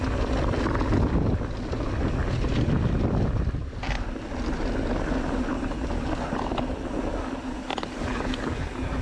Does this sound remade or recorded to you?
recorded